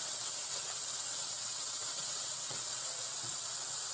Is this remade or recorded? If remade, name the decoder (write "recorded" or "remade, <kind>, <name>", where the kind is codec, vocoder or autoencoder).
remade, vocoder, WaveNeXt